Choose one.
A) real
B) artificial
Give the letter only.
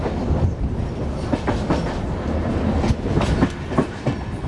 A